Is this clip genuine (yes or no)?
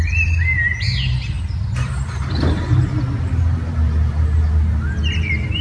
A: yes